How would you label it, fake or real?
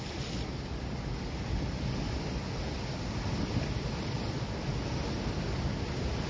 real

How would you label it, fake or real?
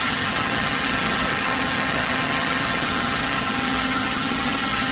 fake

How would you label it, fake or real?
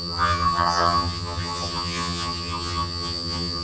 fake